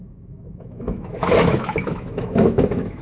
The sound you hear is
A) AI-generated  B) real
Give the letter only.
A